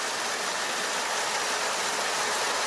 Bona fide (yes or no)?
yes